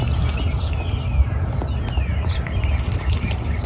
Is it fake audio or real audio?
real